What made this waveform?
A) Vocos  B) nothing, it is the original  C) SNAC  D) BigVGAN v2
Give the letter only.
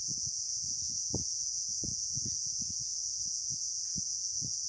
A